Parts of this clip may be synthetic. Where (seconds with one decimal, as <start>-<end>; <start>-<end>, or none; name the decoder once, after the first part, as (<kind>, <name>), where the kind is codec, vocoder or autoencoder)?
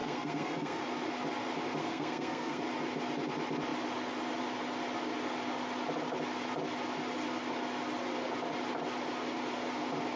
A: 0.0-0.8 (codec, SNAC); 1.8-2.6